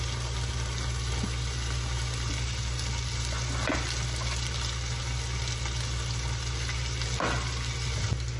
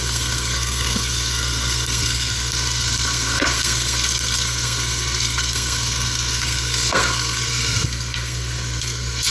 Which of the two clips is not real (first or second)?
second